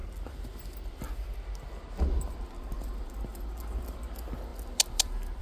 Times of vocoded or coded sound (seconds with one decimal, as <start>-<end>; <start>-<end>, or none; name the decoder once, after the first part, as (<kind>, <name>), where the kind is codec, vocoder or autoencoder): none